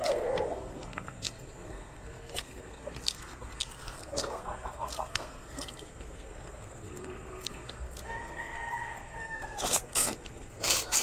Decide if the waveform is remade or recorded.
remade